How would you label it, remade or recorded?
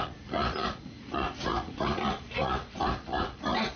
remade